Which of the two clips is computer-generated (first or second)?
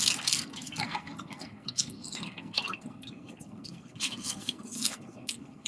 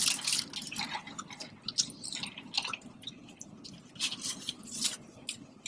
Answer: first